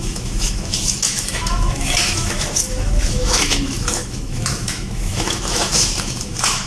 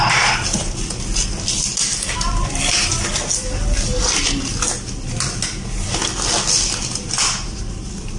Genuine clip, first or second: second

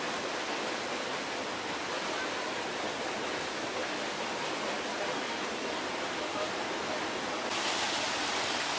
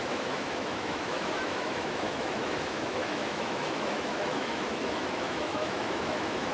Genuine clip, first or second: first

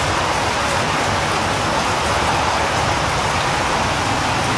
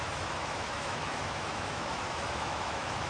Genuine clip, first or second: first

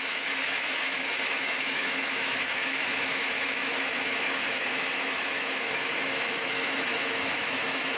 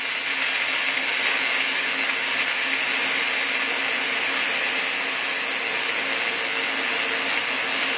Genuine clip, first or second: second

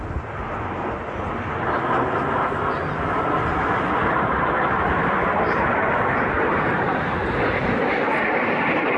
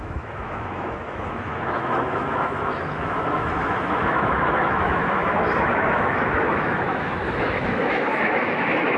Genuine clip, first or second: first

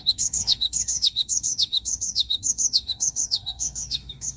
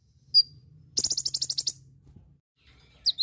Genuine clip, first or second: second